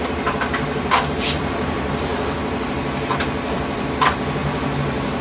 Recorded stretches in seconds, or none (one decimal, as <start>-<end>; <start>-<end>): 2.1-2.7; 4.4-5.2

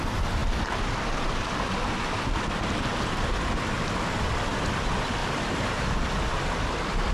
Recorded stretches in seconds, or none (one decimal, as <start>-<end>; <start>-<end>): 0.0-5.2; 5.9-7.1

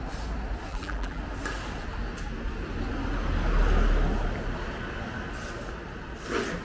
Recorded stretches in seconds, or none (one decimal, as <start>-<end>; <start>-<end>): 0.0-0.7; 1.2-6.6

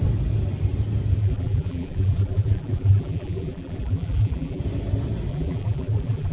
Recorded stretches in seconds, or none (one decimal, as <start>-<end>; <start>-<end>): 0.0-1.2; 4.6-5.3

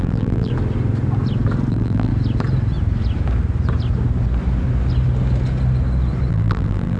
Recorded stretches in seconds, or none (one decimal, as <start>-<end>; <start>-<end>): 0.5-1.7; 2.1-6.3